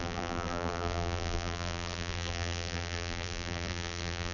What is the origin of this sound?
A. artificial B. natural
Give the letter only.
A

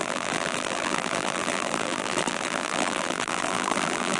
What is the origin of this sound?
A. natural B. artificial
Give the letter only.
B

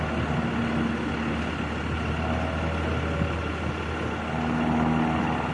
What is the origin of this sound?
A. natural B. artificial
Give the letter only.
A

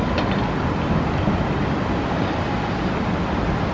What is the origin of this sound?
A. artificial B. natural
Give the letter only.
B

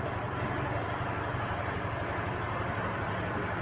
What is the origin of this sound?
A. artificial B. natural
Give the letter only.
B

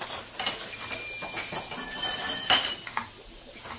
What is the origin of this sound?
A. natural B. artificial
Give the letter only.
A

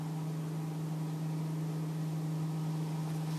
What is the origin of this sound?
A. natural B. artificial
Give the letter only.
A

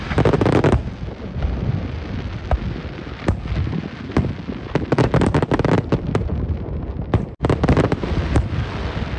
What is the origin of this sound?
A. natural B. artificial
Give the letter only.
A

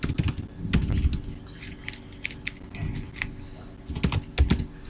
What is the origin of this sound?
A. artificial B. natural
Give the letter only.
B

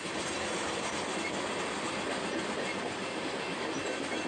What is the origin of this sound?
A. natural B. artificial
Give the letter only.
A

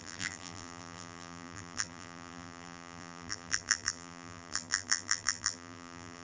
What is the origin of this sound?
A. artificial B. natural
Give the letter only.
A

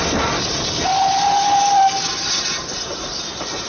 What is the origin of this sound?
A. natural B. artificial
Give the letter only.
A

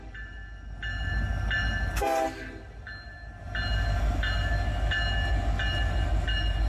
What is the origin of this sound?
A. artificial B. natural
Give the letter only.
B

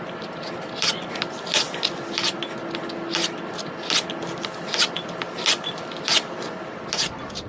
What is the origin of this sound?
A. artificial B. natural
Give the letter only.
B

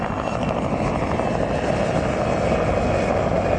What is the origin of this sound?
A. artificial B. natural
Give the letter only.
B